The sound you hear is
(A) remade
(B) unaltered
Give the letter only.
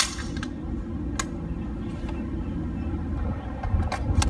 B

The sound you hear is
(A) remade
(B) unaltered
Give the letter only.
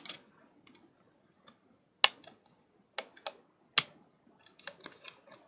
B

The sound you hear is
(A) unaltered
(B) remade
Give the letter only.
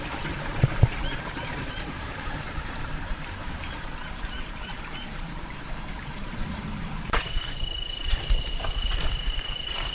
B